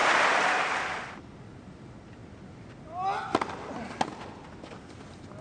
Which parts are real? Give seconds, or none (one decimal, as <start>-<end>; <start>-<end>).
0.0-5.4

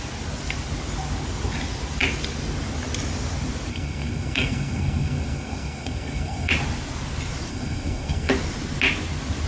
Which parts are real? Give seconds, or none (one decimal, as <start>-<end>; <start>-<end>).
0.0-3.7; 6.5-7.5; 8.3-9.5

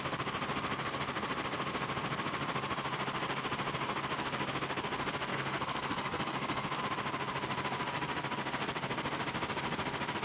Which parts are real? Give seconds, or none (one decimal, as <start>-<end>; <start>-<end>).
0.0-5.3; 6.8-10.2

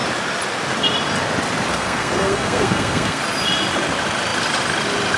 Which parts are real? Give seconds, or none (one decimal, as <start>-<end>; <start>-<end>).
0.0-1.7; 3.2-5.2

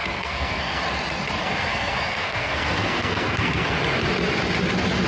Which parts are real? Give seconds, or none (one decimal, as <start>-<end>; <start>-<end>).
0.8-1.4; 3.8-5.1

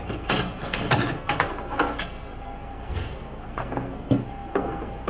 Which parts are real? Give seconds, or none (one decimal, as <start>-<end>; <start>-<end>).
none

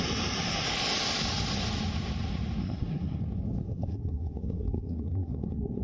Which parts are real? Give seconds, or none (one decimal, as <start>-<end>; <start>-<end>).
0.0-2.6; 3.2-3.6

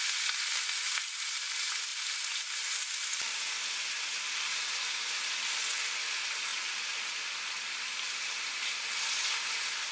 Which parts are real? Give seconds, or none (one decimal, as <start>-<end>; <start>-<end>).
0.0-9.9